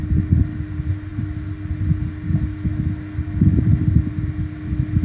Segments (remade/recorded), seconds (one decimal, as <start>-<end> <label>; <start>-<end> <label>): 0.0-5.0 recorded